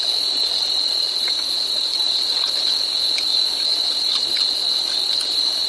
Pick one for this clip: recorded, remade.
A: recorded